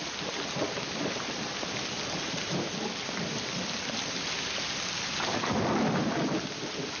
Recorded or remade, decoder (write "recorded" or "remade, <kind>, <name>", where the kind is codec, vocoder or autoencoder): recorded